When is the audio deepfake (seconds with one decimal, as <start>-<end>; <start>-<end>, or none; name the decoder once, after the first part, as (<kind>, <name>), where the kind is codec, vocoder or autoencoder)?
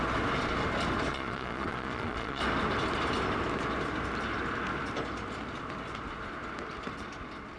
1.1-2.4 (vocoder, Vocos)